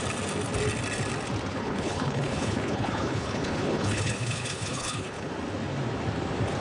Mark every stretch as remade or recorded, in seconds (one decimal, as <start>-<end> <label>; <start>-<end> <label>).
0.0-1.5 recorded; 1.5-5.3 remade; 5.3-6.6 recorded